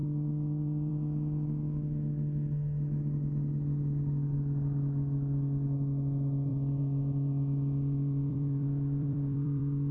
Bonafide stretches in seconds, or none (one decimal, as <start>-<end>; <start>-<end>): 0.9-6.5